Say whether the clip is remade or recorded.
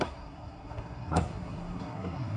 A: remade